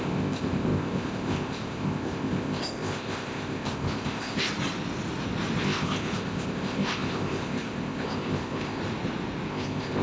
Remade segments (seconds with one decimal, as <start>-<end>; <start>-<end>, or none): 0.0-4.5; 5.6-8.8; 9.5-10.0